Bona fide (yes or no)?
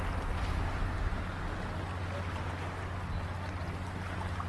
yes